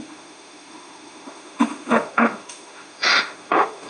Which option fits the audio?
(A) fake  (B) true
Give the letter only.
A